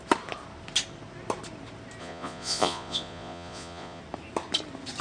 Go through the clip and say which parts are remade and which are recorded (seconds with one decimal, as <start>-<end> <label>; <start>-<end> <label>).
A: 0.0-2.0 recorded; 2.0-4.0 remade; 4.0-5.0 recorded